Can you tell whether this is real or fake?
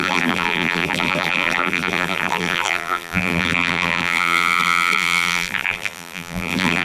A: fake